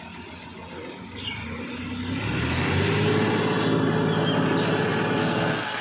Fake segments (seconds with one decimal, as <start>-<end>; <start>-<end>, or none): 5.2-5.8